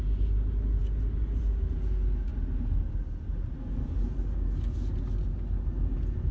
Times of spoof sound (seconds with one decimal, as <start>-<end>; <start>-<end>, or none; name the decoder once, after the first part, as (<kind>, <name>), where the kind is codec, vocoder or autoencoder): none